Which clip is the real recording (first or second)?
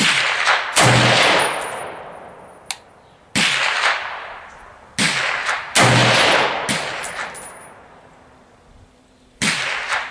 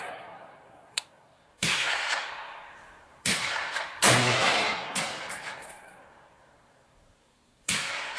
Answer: first